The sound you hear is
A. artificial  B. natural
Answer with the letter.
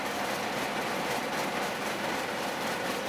A